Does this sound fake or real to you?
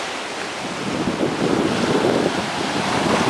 real